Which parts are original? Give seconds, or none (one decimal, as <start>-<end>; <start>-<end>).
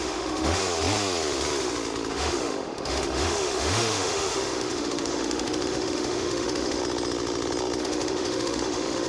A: 0.6-2.1; 6.8-7.8